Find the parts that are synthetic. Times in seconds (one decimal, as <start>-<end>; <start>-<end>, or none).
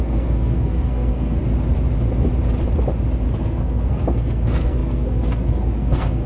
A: 0.0-1.4; 3.4-6.3